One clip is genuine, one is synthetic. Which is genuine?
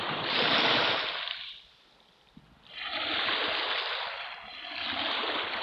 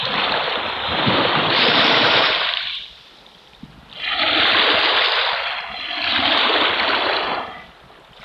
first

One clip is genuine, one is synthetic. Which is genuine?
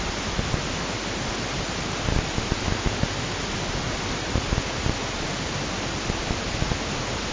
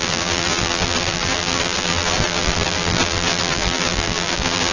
first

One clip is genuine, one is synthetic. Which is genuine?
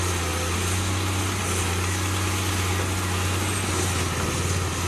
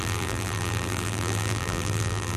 first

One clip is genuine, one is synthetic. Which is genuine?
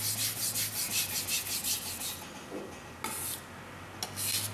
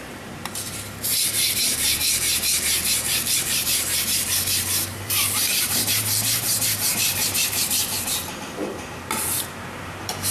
first